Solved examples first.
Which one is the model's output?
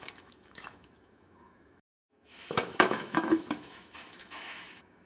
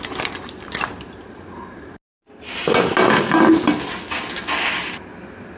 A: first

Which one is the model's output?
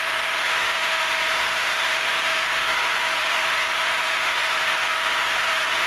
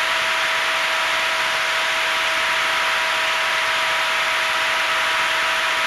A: first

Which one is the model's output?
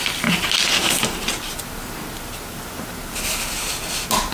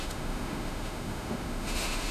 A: second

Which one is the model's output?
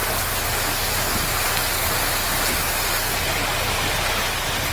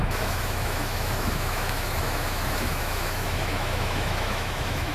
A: second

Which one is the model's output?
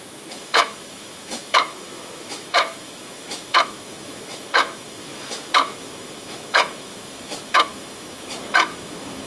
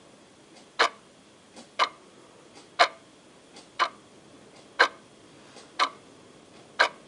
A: first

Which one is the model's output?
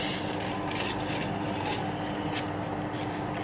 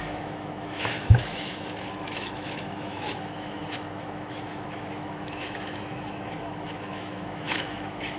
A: second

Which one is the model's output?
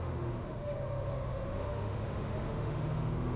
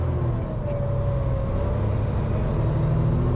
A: first